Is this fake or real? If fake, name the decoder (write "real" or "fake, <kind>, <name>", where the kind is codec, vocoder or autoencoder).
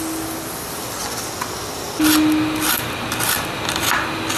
real